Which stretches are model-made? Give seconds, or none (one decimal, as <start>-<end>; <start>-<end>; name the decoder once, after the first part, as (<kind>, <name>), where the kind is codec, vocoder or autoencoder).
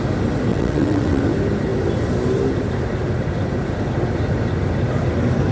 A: 0.5-1.2 (vocoder, WaveNeXt)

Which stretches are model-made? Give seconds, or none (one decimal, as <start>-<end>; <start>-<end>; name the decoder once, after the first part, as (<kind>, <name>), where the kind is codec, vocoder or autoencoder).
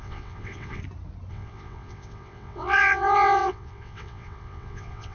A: 0.0-0.8 (vocoder, WaveNeXt); 1.3-5.1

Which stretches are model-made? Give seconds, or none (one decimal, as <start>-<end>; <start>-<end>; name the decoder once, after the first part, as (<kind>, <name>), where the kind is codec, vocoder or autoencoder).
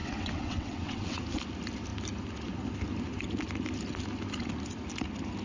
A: 0.0-1.2 (vocoder, WaveNeXt)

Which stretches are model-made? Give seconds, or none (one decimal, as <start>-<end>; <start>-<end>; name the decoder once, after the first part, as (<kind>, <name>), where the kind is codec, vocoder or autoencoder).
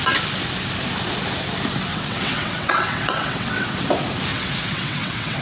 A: 1.9-3.7 (vocoder, WaveNeXt); 4.3-5.4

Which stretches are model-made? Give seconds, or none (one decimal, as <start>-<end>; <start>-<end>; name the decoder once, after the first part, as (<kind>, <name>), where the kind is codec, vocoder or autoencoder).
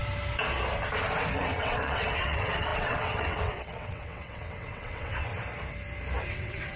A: 1.4-5.3 (vocoder, WaveNeXt); 6.3-6.8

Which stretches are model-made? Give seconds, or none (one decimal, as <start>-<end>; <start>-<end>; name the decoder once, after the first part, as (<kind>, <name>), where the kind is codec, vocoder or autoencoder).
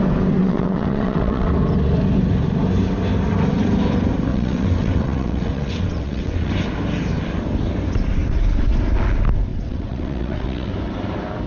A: 0.4-1.5 (vocoder, WaveNeXt); 4.3-6.5; 9.5-10.7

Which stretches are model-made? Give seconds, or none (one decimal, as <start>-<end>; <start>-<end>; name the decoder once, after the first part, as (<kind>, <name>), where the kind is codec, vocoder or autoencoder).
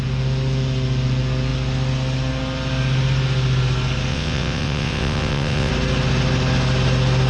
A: 4.1-5.7 (vocoder, WaveNeXt)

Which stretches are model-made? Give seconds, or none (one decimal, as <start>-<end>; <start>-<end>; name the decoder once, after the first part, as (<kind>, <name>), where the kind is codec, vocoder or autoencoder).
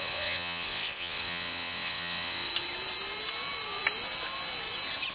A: 0.0-2.5 (vocoder, WaveNeXt)